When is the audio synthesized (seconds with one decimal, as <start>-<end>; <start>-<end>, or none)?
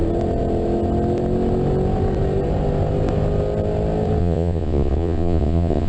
4.2-5.9